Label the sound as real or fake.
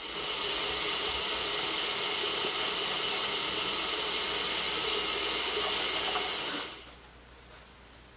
real